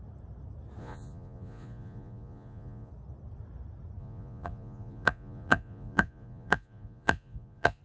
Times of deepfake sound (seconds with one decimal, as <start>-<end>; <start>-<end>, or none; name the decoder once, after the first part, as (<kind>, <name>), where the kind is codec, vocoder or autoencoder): 0.8-2.9 (vocoder, Vocos); 4.0-7.8